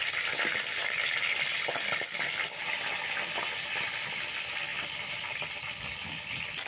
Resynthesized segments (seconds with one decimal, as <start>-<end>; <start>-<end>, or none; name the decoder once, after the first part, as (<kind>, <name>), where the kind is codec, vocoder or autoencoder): none